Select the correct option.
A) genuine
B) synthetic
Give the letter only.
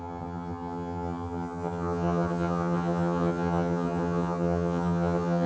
B